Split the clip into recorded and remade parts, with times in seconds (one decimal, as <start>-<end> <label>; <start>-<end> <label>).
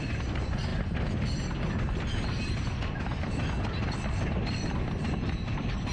0.0-5.9 recorded